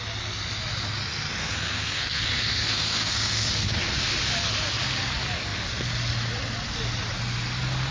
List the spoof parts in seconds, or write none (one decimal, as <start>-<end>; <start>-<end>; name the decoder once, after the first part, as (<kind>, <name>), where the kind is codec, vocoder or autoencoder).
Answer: 1.4-3.5 (codec, SNAC)